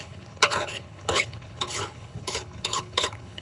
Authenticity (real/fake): fake